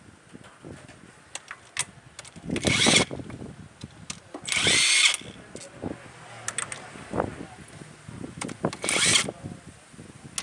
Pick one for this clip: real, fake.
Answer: real